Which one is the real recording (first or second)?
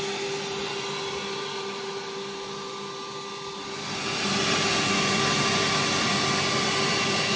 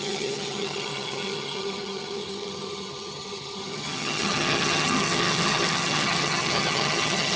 first